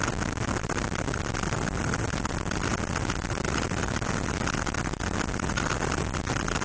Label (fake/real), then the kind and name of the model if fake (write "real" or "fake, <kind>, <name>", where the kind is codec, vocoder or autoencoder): real